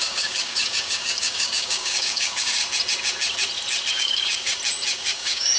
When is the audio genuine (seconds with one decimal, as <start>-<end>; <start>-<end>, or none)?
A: 2.6-3.9; 4.5-5.0